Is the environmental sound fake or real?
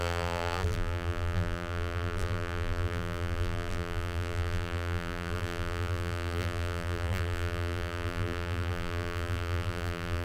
fake